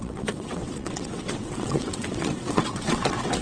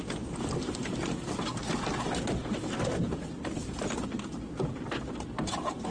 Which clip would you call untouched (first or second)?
second